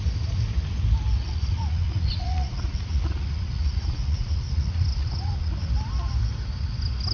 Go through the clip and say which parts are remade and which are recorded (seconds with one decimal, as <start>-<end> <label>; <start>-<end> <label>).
0.0-1.2 recorded; 1.2-5.5 remade; 5.5-7.1 recorded